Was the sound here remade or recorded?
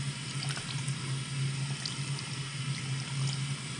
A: recorded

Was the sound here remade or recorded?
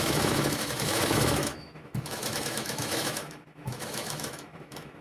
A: remade